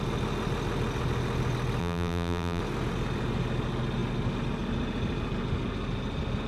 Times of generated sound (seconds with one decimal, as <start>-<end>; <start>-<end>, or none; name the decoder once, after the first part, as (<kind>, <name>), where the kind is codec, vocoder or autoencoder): 1.8-2.6 (vocoder, BigVGAN v2)